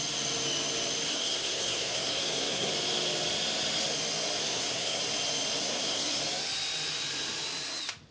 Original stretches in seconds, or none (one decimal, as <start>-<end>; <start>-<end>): 0.0-1.1; 2.7-4.4; 5.0-5.6; 6.2-8.1